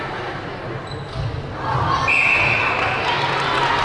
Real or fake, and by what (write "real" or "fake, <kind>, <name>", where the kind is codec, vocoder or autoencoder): real